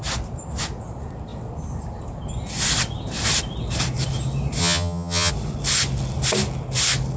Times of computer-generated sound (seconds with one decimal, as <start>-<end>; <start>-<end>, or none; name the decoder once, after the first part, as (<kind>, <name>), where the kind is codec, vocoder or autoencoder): 4.6-5.3 (vocoder, HiFi-GAN)